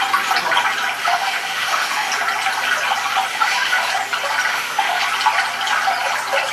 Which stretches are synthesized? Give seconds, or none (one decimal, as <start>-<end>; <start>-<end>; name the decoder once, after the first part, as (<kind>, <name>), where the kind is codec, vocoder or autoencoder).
1.0-2.1 (autoencoder, DAC-VAE); 3.3-3.9; 4.5-5.0